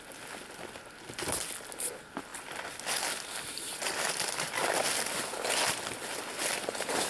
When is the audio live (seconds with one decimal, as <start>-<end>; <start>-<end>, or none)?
0.0-7.1